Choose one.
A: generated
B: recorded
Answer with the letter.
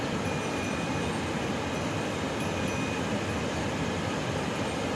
B